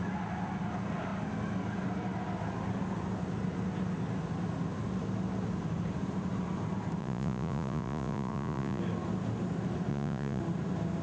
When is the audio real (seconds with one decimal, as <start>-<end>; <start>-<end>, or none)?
0.0-7.0; 8.8-9.9; 10.4-11.0